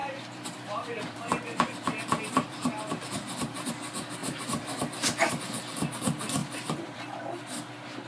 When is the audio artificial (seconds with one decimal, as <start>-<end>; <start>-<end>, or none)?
0.0-3.7; 4.2-5.3; 6.4-7.2